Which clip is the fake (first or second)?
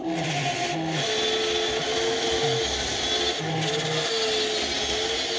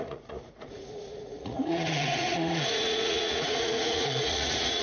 second